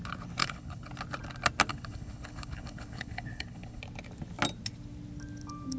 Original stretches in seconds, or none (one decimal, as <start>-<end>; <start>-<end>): 0.0-0.4; 0.9-1.7; 3.8-5.8